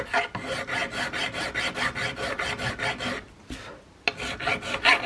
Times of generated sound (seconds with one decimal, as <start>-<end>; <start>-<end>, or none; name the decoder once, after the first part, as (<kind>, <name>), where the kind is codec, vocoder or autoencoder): none